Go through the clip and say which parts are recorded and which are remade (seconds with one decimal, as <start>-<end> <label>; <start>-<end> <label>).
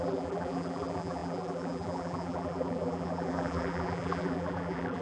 0.0-5.0 remade